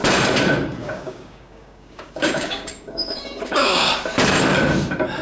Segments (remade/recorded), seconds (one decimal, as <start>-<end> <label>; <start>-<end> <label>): 0.0-0.8 recorded; 0.8-3.9 remade; 3.9-5.2 recorded